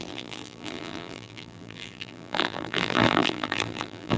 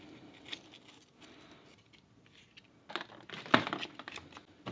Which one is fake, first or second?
first